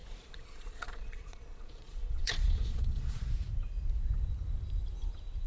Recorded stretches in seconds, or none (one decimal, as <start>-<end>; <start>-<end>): 3.3-5.5